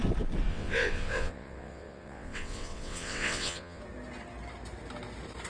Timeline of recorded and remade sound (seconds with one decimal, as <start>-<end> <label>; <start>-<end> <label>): 0.0-0.5 recorded; 0.5-3.8 remade; 3.8-5.5 recorded